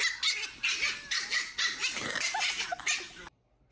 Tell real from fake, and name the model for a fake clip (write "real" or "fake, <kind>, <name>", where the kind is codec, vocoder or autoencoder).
real